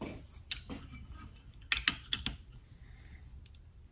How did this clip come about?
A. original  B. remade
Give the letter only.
A